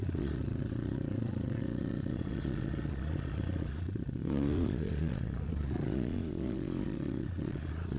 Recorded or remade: remade